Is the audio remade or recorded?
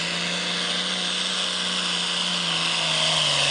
recorded